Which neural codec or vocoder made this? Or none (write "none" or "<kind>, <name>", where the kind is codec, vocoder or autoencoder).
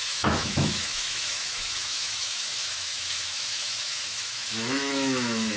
autoencoder, DAC-VAE